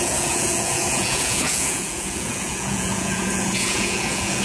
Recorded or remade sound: remade